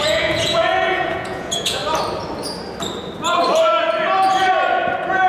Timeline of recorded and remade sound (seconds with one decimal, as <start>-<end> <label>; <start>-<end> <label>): 0.0-1.8 remade; 1.8-5.3 recorded